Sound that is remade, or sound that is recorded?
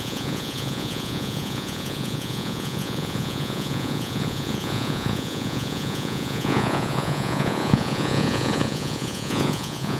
remade